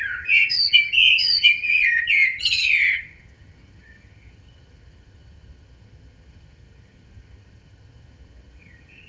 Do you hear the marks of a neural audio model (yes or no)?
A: yes